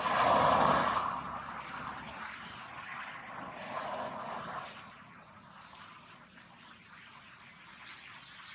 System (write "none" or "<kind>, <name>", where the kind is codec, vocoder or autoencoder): vocoder, BigVGAN v2